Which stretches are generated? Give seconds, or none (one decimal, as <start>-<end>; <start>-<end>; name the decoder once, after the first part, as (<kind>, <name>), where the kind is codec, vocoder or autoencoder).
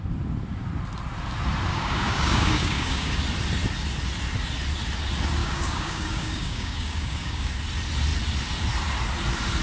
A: 1.7-3.2 (codec, DAC); 5.4-7.5